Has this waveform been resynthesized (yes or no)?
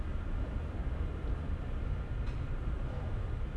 no